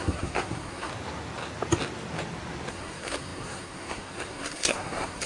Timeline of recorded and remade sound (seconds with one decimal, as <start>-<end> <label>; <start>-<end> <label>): 0.0-0.9 remade; 0.9-2.7 recorded; 2.7-5.3 remade